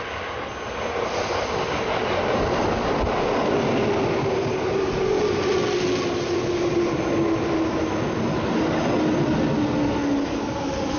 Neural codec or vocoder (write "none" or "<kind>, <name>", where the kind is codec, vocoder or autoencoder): none